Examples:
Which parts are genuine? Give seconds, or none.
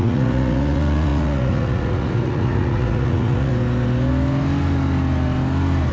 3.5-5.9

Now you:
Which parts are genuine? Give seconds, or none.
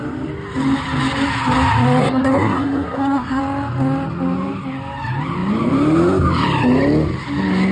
0.0-2.0; 3.4-7.7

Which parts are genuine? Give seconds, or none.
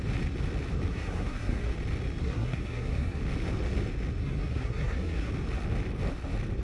0.0-0.9; 1.7-2.2; 3.2-4.2; 5.3-6.6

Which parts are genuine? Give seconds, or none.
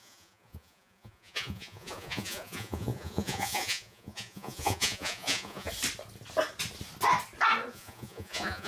5.7-7.7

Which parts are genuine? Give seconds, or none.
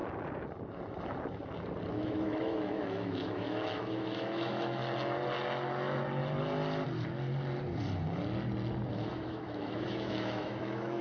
0.0-1.9; 4.8-8.9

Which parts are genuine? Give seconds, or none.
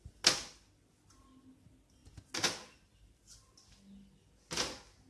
0.0-5.1